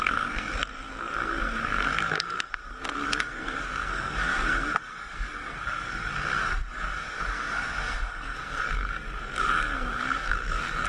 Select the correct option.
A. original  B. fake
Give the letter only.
B